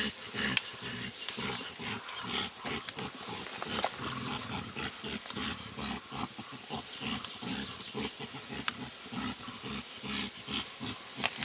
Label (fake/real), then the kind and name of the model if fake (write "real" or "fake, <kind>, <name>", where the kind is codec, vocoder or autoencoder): real